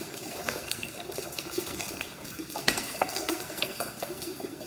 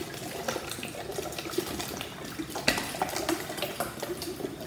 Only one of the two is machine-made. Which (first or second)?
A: first